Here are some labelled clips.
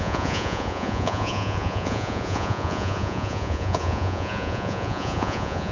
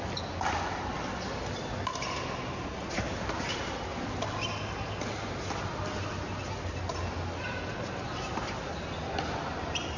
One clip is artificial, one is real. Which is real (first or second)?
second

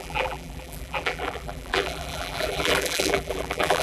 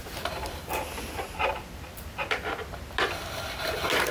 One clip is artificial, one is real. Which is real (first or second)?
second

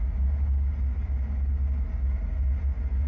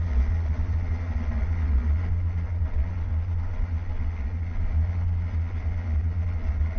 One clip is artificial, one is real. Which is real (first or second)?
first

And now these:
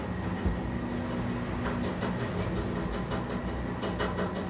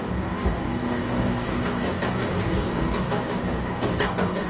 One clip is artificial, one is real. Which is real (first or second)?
first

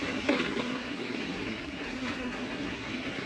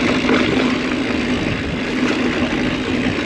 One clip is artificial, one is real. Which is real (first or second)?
second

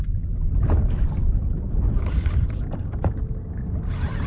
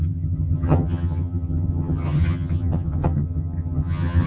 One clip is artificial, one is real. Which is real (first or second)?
first